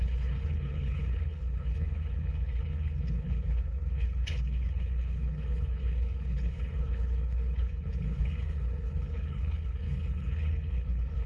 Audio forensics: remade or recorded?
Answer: remade